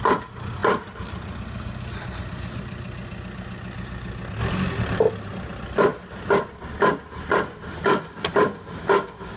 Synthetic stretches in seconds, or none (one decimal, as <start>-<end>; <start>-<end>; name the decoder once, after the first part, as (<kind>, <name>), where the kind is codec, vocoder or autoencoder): none